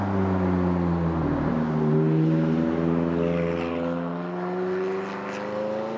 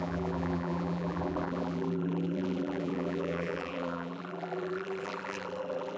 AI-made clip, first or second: second